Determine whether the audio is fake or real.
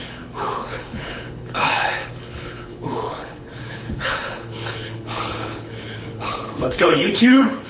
fake